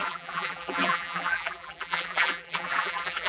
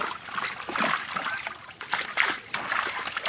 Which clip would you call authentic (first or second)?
second